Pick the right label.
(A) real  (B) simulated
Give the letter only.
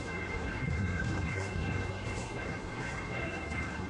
B